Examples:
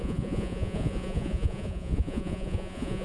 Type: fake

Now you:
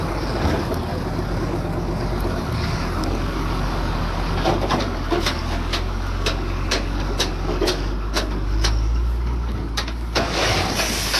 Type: fake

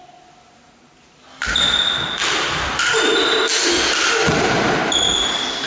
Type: real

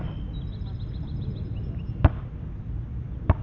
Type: real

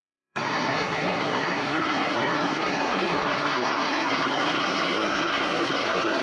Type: fake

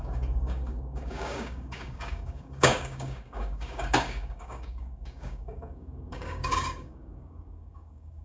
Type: fake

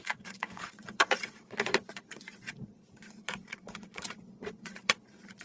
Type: fake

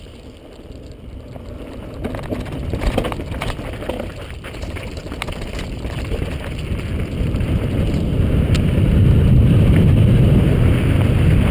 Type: fake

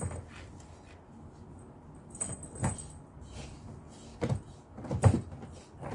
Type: real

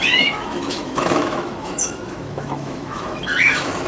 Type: fake